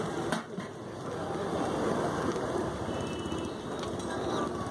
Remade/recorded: recorded